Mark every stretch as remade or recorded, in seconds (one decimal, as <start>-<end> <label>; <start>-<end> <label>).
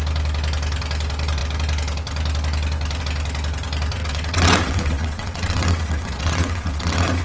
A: 0.0-4.0 recorded; 4.0-7.2 remade